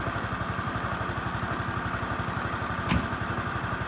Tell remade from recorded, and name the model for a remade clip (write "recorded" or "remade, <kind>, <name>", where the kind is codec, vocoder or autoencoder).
recorded